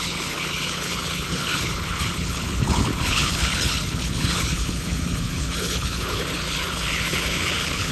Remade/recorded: remade